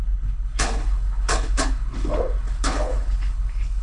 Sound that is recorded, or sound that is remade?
remade